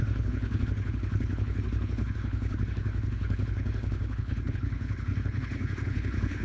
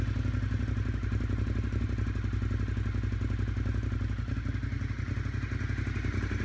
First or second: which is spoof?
first